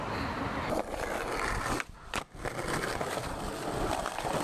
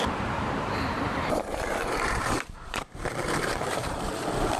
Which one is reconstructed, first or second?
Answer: second